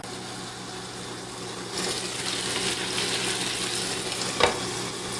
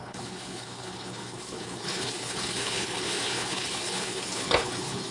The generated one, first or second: second